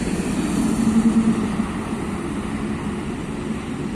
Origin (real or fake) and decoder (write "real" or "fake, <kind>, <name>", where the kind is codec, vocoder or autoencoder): real